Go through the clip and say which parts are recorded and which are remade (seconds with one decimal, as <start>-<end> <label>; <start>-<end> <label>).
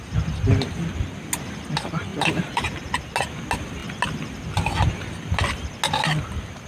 0.0-2.1 recorded; 2.1-2.9 remade; 2.9-6.7 recorded